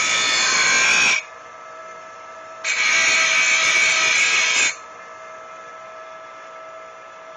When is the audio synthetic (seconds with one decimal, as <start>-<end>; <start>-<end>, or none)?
none